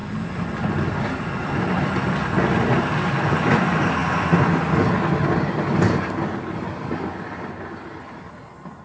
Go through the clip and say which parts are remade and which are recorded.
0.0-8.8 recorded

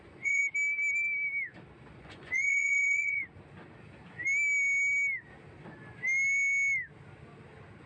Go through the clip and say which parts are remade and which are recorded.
0.0-0.4 remade; 0.4-2.0 recorded; 2.0-3.2 remade; 3.2-7.9 recorded

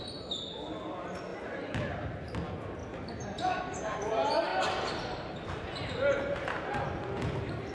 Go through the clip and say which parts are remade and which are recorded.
0.0-2.8 recorded; 2.8-3.6 remade; 3.6-7.7 recorded

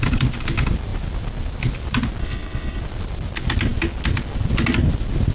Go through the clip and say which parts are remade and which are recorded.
0.0-2.2 recorded; 2.2-2.8 remade; 2.8-5.3 recorded

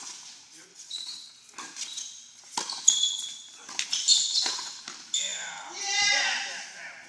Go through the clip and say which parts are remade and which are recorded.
0.0-0.7 recorded; 0.7-1.3 remade; 1.3-4.2 recorded; 4.2-4.8 remade; 4.8-7.1 recorded